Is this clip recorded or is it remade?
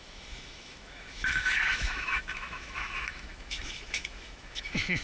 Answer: remade